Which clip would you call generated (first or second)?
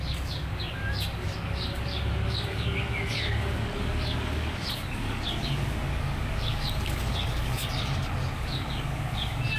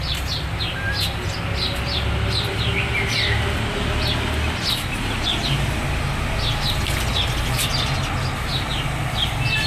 first